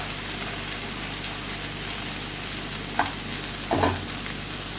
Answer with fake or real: real